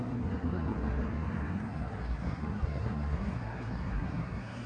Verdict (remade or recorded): remade